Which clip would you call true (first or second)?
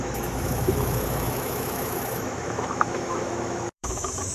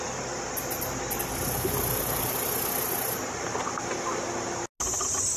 second